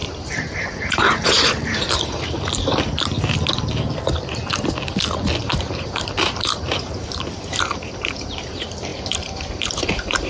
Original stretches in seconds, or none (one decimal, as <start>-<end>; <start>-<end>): 2.7-5.4